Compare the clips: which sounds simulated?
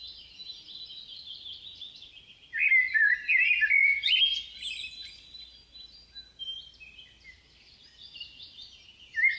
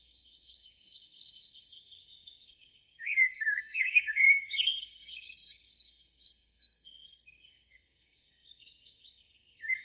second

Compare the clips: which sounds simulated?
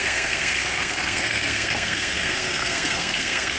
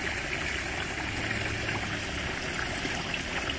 first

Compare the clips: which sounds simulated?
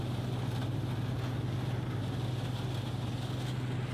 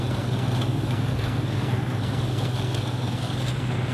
second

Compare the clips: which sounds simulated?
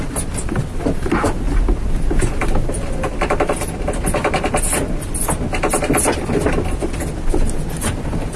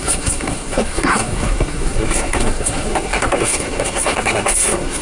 second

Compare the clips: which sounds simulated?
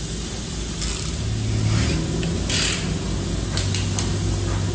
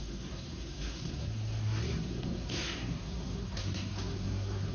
second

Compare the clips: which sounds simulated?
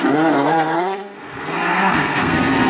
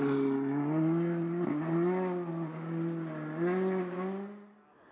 first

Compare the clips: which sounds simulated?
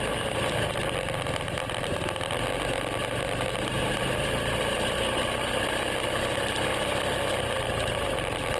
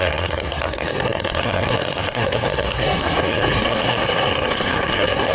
second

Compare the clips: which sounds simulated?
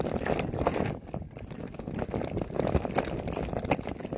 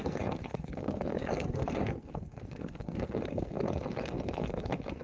second